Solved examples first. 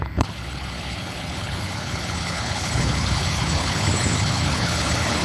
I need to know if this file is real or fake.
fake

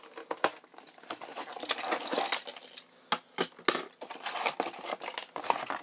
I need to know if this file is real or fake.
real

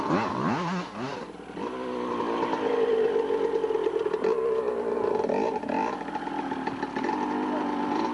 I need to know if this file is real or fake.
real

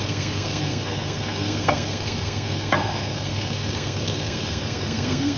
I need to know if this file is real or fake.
fake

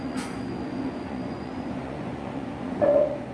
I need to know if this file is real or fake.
fake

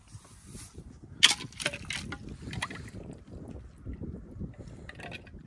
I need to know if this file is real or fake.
real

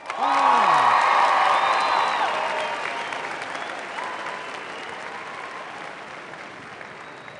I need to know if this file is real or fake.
real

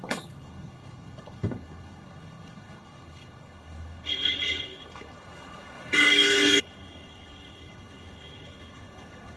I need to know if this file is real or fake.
fake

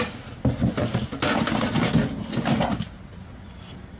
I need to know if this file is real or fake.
real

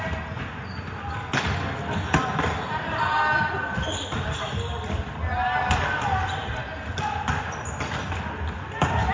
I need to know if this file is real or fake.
real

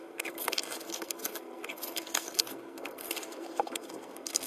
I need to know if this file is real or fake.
fake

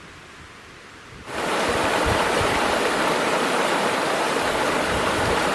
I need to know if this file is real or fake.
fake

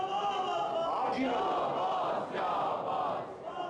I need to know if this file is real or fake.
real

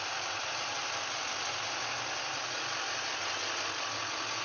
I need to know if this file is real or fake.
real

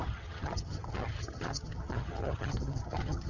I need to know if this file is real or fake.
fake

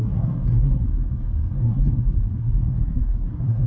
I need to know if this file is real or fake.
fake